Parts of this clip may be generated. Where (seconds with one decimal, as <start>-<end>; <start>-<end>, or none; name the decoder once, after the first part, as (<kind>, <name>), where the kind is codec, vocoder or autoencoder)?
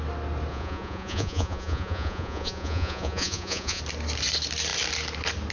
0.5-3.8 (vocoder, Vocos)